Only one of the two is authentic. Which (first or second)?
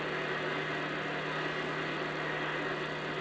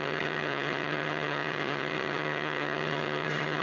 first